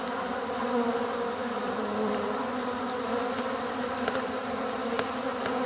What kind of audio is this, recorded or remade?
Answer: recorded